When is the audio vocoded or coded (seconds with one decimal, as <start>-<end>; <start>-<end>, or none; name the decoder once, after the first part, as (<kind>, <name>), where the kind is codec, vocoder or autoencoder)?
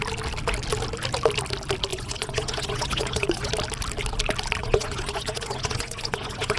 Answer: 1.9-3.5 (vocoder, Vocos); 4.6-6.6